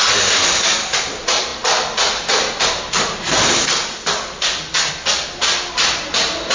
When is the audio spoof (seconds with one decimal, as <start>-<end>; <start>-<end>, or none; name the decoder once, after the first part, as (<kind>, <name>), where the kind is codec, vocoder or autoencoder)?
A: none